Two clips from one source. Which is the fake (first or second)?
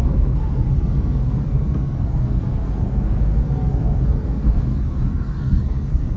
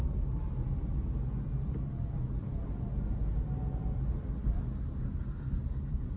first